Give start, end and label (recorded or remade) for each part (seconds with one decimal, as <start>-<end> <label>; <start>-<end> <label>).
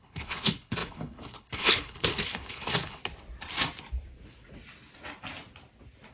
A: 0.0-3.0 remade; 3.0-6.1 recorded